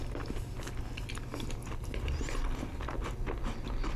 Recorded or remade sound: recorded